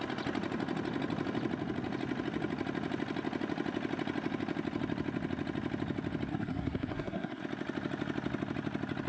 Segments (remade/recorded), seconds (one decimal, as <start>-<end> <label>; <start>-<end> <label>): 0.0-6.3 recorded; 6.3-7.4 remade; 7.4-9.1 recorded